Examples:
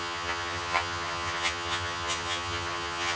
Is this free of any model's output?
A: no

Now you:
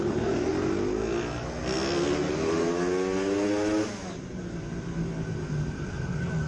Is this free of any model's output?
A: yes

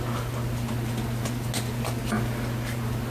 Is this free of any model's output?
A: yes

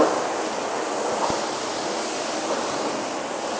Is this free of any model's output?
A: yes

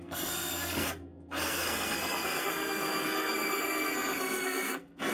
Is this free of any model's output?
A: no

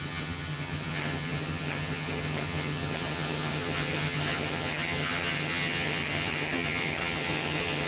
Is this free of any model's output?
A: no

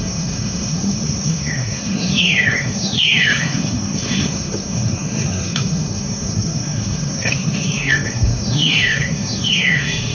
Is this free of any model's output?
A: no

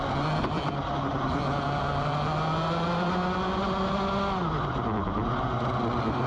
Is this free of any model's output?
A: yes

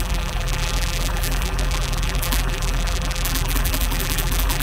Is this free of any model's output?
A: no